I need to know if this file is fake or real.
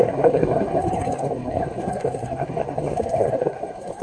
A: fake